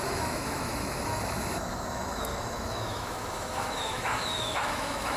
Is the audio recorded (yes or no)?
no